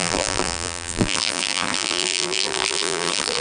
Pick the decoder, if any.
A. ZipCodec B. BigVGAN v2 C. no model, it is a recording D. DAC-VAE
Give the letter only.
B